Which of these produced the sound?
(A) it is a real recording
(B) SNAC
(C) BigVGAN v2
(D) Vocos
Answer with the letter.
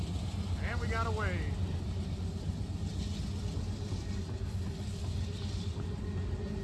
A